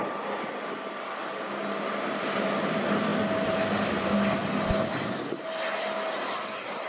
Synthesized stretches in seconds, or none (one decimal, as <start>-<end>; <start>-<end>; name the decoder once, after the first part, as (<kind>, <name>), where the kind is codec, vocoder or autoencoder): none